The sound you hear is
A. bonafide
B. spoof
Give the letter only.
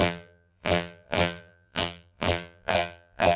B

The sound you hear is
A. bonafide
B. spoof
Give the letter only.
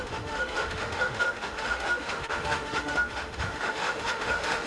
B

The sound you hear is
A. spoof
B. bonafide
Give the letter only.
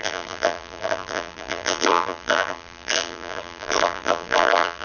A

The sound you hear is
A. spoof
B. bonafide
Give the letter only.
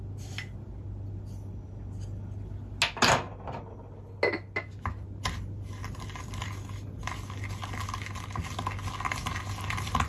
B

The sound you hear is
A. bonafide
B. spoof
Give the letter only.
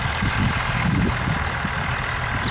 A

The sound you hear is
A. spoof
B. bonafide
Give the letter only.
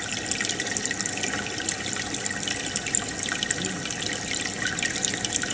B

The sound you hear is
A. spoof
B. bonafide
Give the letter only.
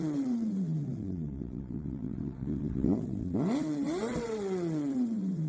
A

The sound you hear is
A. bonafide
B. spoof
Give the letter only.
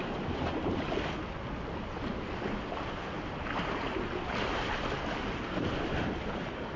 A